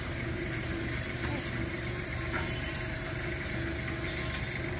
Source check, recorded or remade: recorded